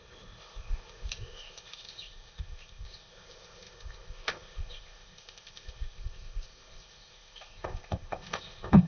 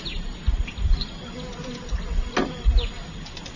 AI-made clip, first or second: first